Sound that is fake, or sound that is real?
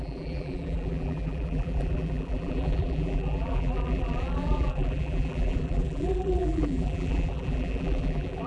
fake